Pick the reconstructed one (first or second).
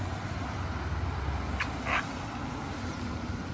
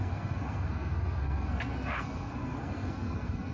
second